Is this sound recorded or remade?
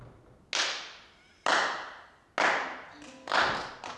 recorded